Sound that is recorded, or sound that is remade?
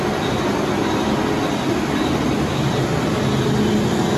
recorded